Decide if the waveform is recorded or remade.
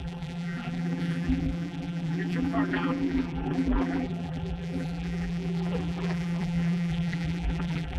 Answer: remade